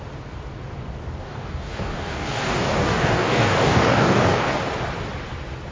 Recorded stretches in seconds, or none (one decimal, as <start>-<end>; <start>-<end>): 0.0-1.2; 4.6-5.7